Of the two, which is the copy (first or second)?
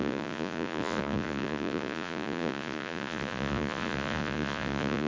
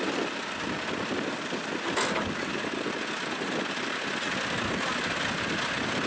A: first